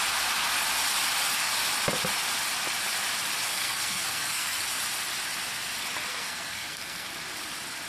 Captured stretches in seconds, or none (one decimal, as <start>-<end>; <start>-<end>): 0.0-3.5; 4.6-6.1; 7.1-7.9